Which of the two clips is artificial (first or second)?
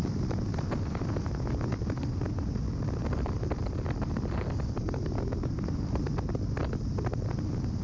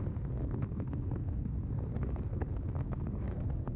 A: second